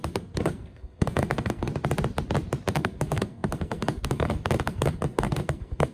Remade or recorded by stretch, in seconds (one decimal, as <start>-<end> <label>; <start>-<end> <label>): 0.0-1.7 remade; 1.7-2.7 recorded; 2.7-5.9 remade